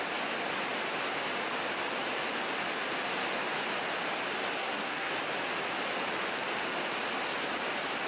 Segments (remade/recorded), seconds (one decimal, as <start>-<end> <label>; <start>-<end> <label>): 0.0-4.6 recorded; 4.6-5.1 remade; 5.1-8.1 recorded